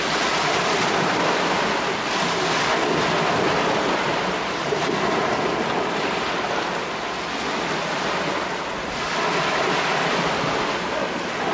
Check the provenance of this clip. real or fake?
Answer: real